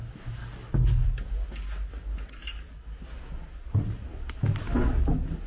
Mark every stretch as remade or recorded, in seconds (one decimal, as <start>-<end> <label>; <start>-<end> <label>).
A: 0.0-0.4 recorded; 0.4-0.9 remade; 0.9-2.4 recorded; 2.4-3.0 remade; 3.0-5.5 recorded